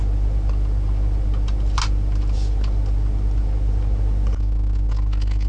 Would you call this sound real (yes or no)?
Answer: yes